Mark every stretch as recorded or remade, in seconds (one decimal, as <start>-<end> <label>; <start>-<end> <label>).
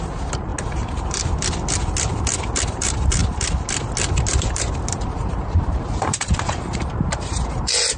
0.0-0.5 remade; 0.5-2.7 recorded; 2.7-3.2 remade; 3.2-4.3 recorded; 4.3-8.0 remade